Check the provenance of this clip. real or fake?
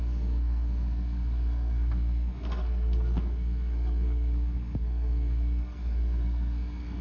fake